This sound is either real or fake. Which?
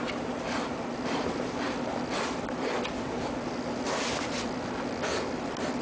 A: real